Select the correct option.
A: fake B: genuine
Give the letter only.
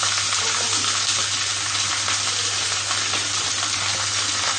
B